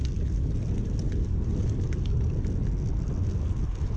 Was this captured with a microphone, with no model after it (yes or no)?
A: yes